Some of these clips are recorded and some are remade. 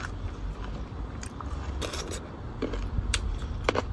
remade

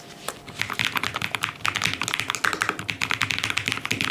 recorded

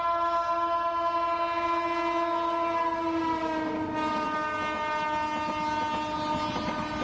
recorded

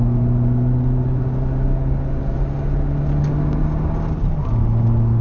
recorded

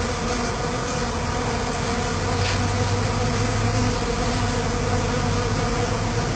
recorded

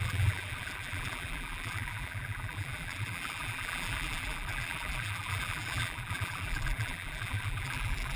remade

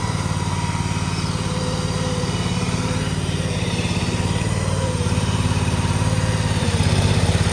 remade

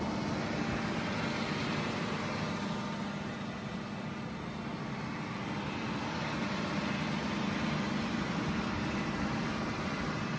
recorded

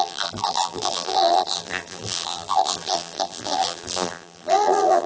remade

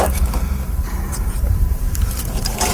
remade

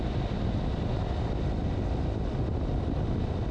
recorded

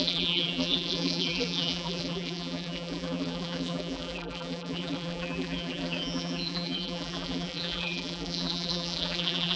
remade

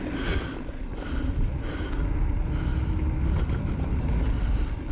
recorded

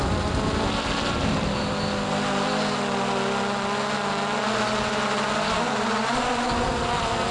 recorded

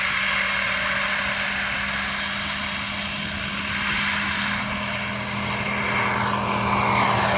remade